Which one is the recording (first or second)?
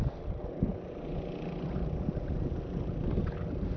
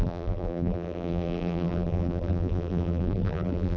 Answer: first